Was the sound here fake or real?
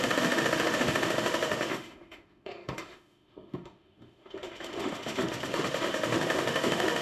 fake